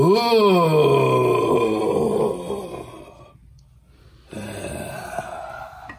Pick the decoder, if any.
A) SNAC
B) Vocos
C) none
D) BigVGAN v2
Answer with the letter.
C